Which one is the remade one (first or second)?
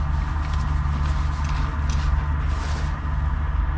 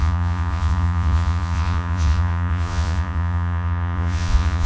second